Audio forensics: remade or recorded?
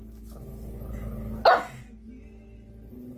recorded